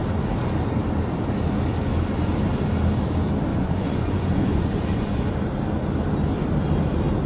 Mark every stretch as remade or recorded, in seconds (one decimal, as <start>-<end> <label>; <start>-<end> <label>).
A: 0.0-3.5 recorded; 3.5-5.3 remade; 5.3-7.3 recorded